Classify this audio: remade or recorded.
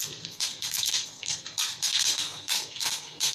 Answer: remade